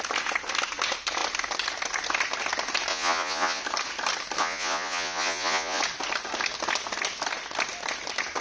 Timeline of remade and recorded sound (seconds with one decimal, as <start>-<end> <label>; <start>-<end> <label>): 0.0-2.9 recorded; 2.9-3.6 remade; 3.6-4.4 recorded; 4.4-5.8 remade; 5.8-8.4 recorded